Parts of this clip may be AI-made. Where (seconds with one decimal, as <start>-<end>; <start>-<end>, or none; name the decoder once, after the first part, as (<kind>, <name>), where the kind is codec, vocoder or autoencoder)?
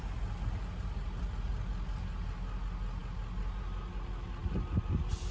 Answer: none